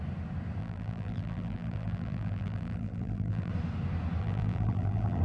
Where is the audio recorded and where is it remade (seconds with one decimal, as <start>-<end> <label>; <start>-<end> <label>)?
0.0-0.6 recorded; 0.6-3.5 remade; 3.5-4.2 recorded; 4.2-5.2 remade

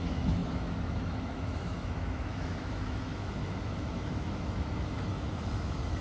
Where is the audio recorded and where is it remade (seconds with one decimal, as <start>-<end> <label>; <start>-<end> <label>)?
0.0-6.0 remade

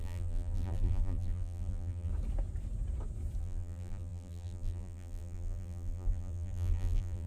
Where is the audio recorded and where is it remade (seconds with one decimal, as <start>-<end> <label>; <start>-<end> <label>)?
0.0-2.1 remade; 2.1-3.4 recorded; 3.4-7.3 remade

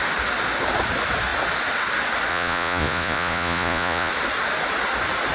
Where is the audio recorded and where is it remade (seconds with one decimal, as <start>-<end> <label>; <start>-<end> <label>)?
0.0-2.3 recorded; 2.3-4.1 remade; 4.1-5.3 recorded

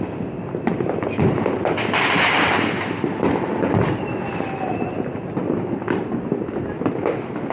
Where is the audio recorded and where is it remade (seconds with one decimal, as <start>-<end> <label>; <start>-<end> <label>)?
0.0-0.7 recorded; 0.7-4.0 remade; 4.0-7.5 recorded

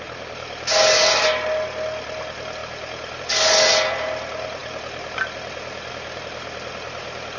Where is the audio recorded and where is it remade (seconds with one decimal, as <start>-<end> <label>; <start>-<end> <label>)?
0.0-7.4 recorded

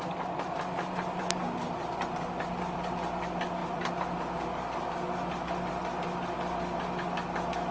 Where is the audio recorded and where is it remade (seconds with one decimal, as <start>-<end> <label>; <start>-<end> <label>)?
0.0-7.7 recorded